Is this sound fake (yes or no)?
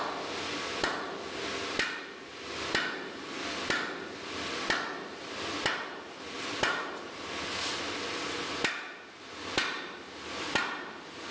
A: no